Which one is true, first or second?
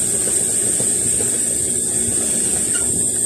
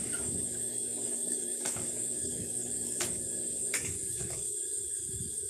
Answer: first